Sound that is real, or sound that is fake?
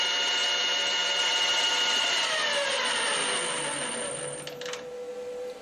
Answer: real